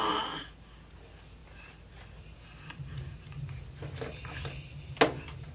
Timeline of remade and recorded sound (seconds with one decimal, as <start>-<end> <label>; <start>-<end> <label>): 0.0-5.5 recorded